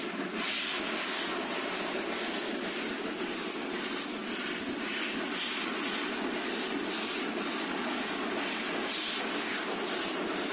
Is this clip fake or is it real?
real